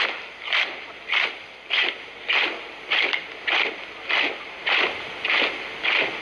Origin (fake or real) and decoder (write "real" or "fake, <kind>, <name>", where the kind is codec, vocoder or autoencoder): real